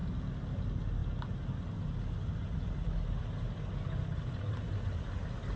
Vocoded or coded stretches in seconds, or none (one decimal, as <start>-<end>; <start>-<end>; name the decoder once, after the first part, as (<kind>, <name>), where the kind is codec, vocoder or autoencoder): none